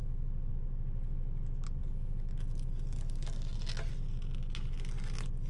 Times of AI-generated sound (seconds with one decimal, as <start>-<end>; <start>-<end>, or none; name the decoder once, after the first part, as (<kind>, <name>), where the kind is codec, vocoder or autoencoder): none